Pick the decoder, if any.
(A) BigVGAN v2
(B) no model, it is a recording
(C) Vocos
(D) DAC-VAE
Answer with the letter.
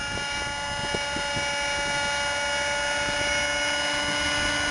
B